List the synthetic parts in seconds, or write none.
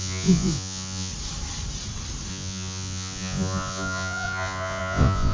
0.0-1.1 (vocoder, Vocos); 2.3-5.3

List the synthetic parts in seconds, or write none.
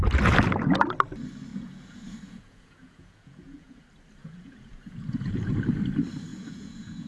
1.5-3.8 (vocoder, Vocos); 4.2-5.6; 6.3-7.1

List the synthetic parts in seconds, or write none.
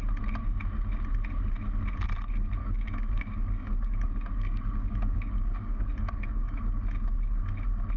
2.6-6.6 (codec, DAC)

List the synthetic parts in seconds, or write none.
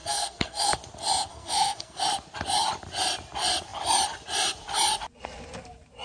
0.0-0.7 (codec, SNAC); 1.3-2.0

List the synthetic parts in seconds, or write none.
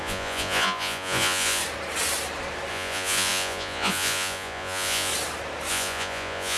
0.0-1.6 (vocoder, Vocos); 2.7-5.1; 5.7-6.6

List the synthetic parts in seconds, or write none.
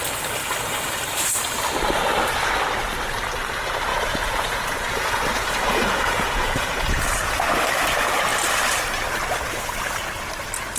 3.9-7.5 (vocoder, Vocos)